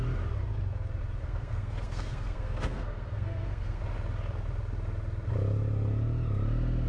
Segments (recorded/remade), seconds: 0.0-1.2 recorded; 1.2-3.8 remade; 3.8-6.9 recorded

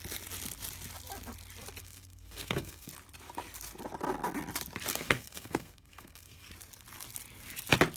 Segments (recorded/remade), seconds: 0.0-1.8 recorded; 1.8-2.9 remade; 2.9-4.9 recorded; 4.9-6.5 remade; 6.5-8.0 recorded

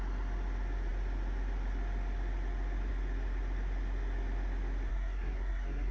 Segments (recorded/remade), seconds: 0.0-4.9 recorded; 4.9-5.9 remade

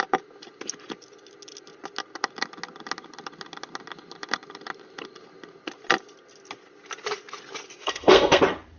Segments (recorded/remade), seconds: 0.0-7.8 recorded; 7.8-8.4 remade; 8.4-8.8 recorded

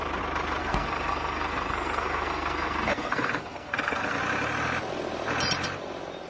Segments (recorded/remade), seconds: 0.0-0.6 recorded; 0.6-4.2 remade; 4.2-6.3 recorded

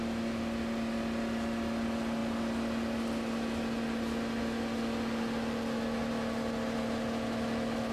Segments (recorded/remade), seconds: 0.0-7.9 recorded

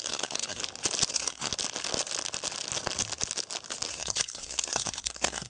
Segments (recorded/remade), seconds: 0.0-0.6 remade; 0.6-1.1 recorded; 1.1-1.5 remade; 1.5-3.9 recorded; 3.9-5.5 remade